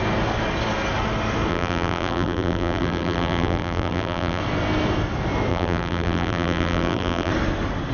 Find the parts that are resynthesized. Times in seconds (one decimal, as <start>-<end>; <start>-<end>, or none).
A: 1.5-4.4; 5.5-7.3